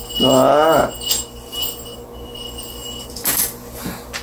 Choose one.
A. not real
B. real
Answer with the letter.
B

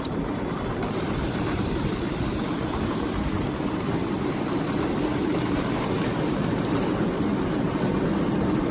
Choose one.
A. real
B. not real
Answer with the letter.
B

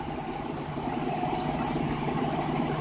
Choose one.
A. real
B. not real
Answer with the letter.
B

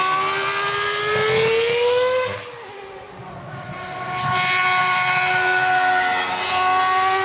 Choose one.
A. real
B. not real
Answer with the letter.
A